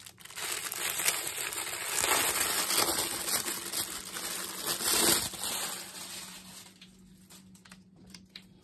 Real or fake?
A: real